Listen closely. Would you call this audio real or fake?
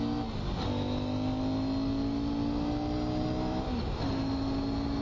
real